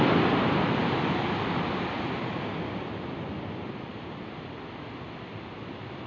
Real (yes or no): yes